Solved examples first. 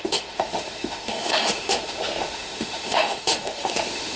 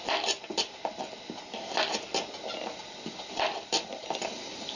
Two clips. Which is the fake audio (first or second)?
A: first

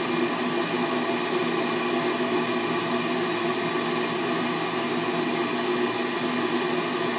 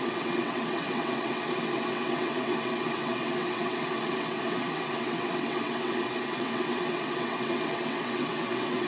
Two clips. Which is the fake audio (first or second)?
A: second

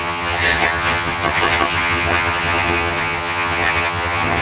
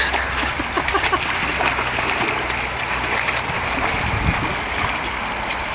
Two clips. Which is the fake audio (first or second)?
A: first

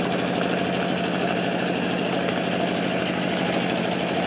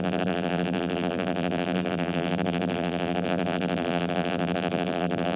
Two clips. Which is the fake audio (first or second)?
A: second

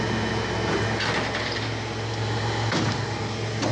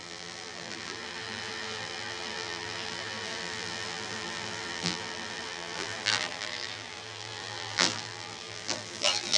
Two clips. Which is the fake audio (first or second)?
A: second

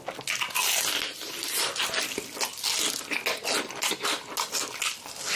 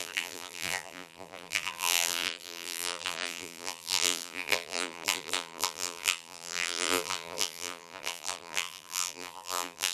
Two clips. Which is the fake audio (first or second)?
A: second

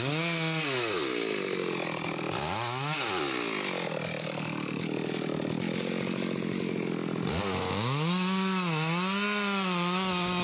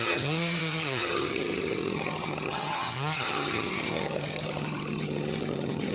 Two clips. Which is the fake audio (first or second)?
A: second